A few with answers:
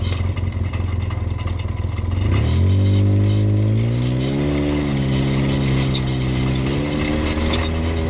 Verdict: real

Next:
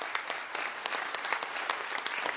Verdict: real